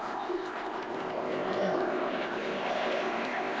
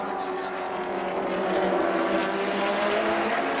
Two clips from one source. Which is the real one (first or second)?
second